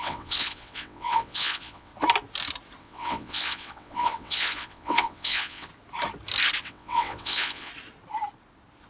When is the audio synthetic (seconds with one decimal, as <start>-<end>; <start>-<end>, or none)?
0.0-1.9; 2.8-5.7; 6.6-7.7